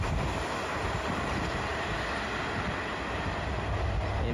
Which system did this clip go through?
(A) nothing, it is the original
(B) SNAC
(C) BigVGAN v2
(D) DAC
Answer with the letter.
A